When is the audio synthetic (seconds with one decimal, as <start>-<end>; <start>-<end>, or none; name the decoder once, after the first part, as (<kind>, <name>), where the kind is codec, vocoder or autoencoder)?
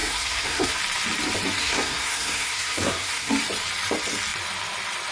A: 0.0-0.8 (codec, SNAC); 1.6-3.3